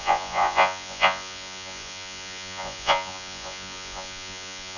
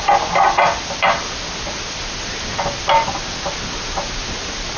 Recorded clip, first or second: second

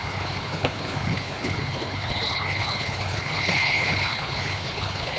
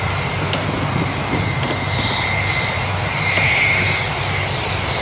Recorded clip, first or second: second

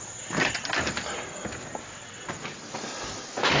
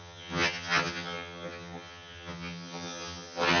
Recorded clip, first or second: first